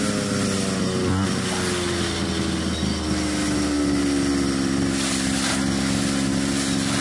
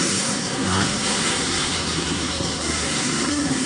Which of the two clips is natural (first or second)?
first